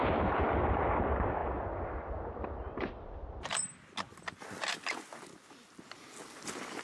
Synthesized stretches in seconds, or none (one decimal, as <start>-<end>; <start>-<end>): none